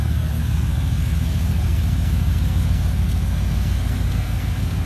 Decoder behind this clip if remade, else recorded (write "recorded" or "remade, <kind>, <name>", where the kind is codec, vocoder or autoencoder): remade, codec, SNAC